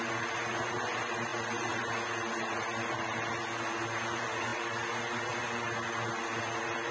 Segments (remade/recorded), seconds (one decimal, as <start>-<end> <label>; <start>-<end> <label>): 0.0-6.9 recorded